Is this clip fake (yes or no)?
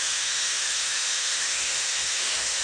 yes